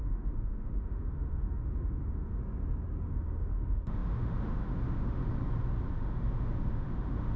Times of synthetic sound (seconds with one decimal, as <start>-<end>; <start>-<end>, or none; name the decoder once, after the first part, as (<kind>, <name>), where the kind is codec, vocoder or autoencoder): 0.0-2.4 (autoencoder, DAC-VAE); 3.1-5.2; 5.9-7.4